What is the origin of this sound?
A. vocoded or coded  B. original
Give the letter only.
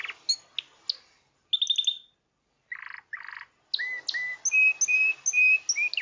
B